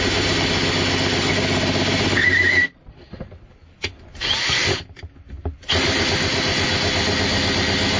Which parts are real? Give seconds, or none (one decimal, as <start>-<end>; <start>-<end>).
0.0-8.0